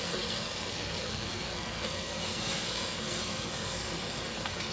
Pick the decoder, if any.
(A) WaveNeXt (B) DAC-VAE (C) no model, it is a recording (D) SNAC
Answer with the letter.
D